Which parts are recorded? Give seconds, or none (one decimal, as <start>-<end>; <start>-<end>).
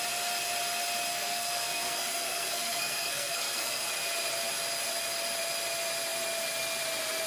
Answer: 0.0-1.1; 3.9-7.3